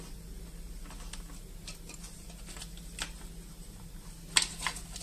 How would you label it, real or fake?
real